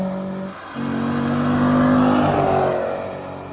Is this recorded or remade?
recorded